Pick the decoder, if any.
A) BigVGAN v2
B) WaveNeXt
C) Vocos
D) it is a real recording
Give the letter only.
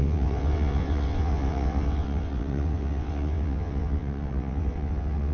B